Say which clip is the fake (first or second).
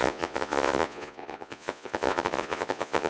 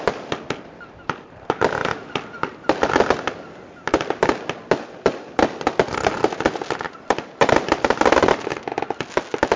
first